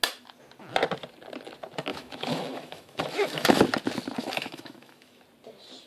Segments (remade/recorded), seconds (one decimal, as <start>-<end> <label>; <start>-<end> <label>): 0.0-1.9 recorded; 1.9-3.6 remade; 3.6-4.2 recorded; 4.2-5.2 remade; 5.2-5.9 recorded